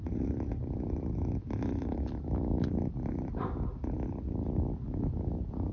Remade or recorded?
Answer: recorded